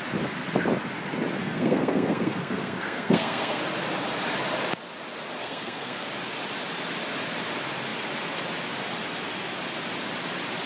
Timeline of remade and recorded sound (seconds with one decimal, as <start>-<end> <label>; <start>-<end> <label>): 0.0-1.4 recorded; 1.4-3.6 remade; 3.6-5.4 recorded; 5.4-6.1 remade; 6.1-10.7 recorded